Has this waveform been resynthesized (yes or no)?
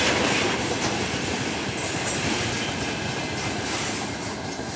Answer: no